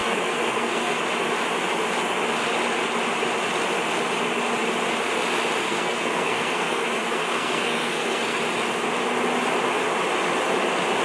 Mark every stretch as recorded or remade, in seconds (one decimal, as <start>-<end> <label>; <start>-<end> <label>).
0.0-1.0 remade; 1.0-5.6 recorded; 5.6-8.4 remade; 8.4-11.0 recorded